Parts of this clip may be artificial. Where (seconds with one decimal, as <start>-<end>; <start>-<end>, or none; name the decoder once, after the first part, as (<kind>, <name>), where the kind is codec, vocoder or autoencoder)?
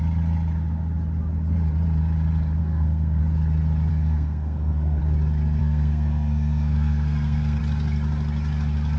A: 2.6-3.2 (codec, SNAC); 3.9-5.0; 5.6-7.6